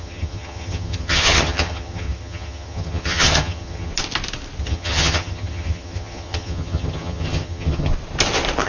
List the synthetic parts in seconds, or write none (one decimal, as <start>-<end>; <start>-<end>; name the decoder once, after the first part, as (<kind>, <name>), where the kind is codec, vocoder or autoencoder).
0.0-3.9 (vocoder, HiFi-GAN); 4.6-7.9